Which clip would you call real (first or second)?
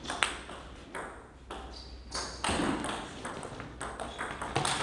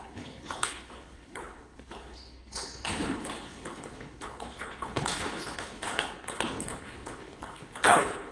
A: first